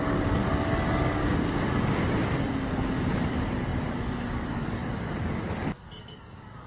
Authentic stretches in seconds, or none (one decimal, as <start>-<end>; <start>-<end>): 1.2-2.7